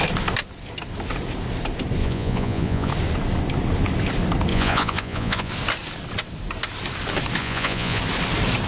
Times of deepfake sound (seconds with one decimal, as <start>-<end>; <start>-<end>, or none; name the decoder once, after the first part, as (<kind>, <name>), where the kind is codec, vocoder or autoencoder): 2.0-2.9 (vocoder, Vocos); 4.5-5.5; 7.4-8.0